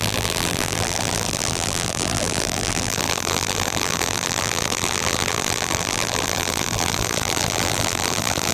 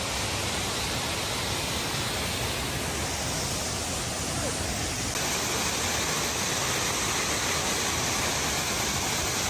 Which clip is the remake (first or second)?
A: first